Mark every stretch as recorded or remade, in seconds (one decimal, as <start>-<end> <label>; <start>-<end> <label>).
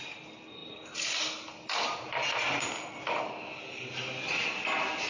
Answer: 0.0-5.1 recorded